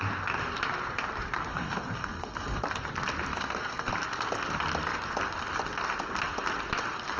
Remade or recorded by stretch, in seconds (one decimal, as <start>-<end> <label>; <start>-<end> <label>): 0.0-1.5 recorded; 1.5-2.6 remade; 2.6-3.3 recorded; 3.3-3.9 remade; 3.9-7.2 recorded